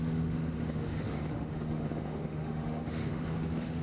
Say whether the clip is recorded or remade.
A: remade